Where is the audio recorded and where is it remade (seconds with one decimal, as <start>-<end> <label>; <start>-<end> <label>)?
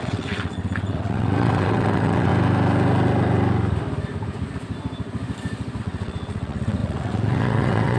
0.0-2.3 remade; 2.3-5.8 recorded; 5.8-8.0 remade